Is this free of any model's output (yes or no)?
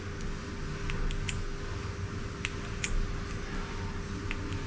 yes